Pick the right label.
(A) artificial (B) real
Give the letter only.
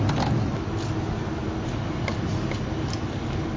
B